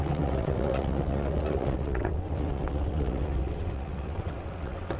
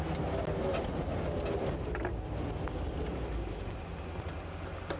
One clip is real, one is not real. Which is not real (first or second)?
first